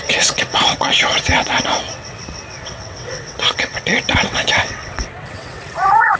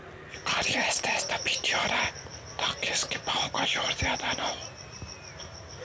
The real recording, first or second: second